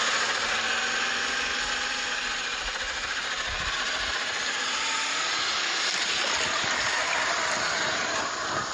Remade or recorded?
recorded